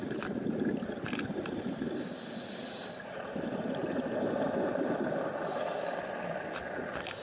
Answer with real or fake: fake